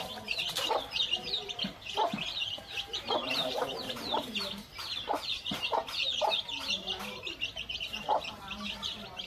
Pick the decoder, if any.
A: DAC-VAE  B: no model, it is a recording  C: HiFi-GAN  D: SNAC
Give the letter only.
B